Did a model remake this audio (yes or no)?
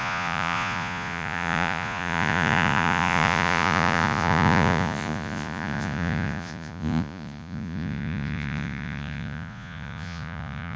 yes